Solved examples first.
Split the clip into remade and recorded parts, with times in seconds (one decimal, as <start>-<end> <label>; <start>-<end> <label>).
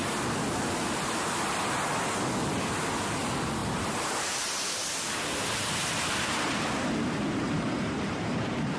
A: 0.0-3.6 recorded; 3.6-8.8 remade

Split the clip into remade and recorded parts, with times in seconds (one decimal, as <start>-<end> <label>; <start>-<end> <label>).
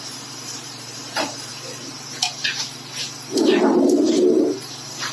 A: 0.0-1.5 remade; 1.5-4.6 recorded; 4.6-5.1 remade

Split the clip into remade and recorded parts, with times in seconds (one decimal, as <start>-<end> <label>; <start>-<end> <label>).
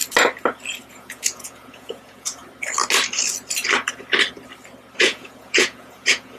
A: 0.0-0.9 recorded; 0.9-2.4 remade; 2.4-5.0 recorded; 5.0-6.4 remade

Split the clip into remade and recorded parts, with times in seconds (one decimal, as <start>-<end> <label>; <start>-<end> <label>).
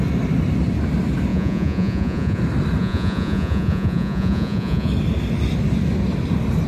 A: 0.0-1.3 recorded; 1.3-2.4 remade; 2.4-2.8 recorded; 2.8-4.9 remade; 4.9-6.7 recorded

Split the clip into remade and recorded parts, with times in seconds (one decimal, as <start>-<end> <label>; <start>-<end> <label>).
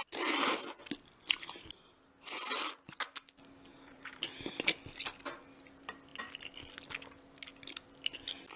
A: 0.0-3.7 recorded; 3.7-4.5 remade; 4.5-8.6 recorded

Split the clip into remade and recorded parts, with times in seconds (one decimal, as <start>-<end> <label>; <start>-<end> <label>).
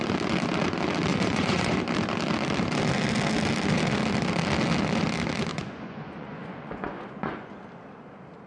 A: 0.0-1.1 recorded; 1.1-1.8 remade; 1.8-5.5 recorded; 5.5-7.6 remade; 7.6-8.5 recorded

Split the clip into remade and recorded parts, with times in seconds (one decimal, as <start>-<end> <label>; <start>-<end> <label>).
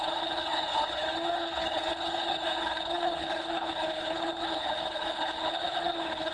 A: 0.0-6.3 remade